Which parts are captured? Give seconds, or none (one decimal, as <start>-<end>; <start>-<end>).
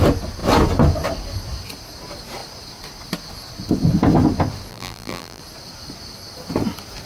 0.0-4.7; 5.4-7.1